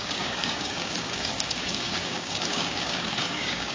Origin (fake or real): fake